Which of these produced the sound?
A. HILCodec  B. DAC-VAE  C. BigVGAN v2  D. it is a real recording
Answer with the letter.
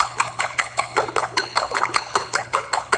A